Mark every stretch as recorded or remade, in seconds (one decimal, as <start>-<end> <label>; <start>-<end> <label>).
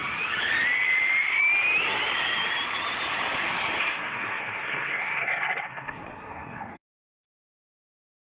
0.0-3.8 recorded; 3.8-7.5 remade; 7.5-8.4 recorded